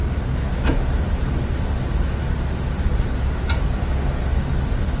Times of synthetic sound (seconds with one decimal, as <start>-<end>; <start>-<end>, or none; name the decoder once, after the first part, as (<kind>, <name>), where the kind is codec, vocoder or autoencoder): 2.9-3.8 (vocoder, BigVGAN v2)